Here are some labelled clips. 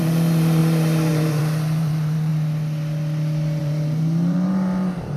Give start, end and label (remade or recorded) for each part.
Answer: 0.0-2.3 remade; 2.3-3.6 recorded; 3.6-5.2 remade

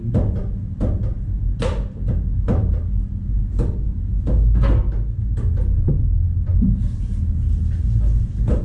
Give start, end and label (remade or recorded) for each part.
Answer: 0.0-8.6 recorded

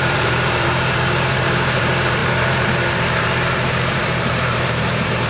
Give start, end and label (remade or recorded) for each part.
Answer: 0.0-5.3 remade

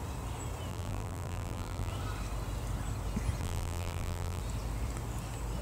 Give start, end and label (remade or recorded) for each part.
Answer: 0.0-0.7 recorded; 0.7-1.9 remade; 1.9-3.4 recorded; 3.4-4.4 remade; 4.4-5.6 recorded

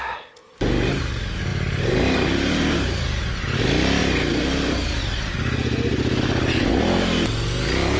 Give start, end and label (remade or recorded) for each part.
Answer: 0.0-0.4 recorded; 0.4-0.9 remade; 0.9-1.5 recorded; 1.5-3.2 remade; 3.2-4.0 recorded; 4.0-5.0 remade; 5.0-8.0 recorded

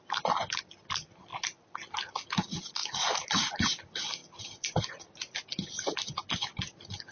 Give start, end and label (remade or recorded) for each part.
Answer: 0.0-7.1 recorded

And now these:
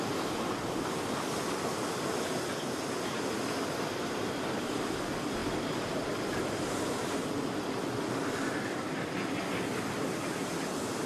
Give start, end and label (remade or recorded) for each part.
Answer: 0.0-11.1 recorded

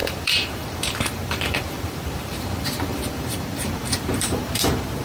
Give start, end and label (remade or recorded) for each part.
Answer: 0.0-5.0 remade